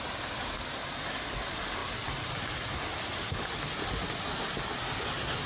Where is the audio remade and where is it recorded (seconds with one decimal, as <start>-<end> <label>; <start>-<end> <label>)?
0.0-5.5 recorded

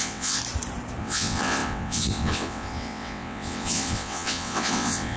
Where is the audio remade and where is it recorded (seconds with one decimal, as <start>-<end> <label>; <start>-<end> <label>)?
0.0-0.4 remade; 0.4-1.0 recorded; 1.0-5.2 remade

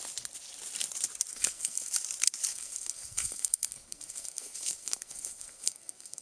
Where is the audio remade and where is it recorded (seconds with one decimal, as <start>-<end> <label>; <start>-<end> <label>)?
0.0-1.3 recorded; 1.3-1.9 remade; 1.9-2.5 recorded; 2.5-6.2 remade

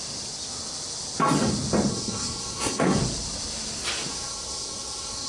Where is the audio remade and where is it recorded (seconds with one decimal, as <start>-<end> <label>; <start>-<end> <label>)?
0.0-1.9 recorded; 1.9-3.0 remade; 3.0-4.1 recorded; 4.1-5.3 remade

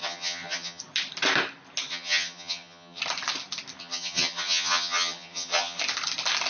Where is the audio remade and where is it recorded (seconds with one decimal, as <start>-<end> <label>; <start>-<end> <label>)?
0.0-0.8 remade; 0.8-1.9 recorded; 1.9-3.0 remade; 3.0-3.8 recorded; 3.8-5.8 remade; 5.8-6.5 recorded

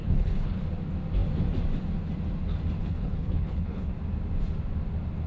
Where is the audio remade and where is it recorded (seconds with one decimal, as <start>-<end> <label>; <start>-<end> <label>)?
0.0-0.6 remade; 0.6-2.8 recorded; 2.8-3.9 remade; 3.9-5.3 recorded

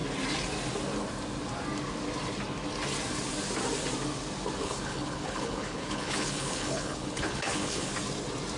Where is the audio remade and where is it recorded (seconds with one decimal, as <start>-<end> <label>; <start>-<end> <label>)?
0.0-4.6 recorded; 4.6-7.9 remade; 7.9-8.6 recorded

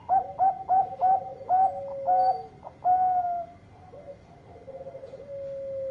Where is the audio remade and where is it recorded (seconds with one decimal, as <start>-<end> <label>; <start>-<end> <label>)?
0.0-5.9 recorded